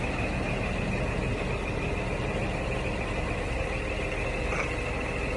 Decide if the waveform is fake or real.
real